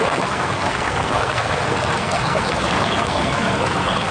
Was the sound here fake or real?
fake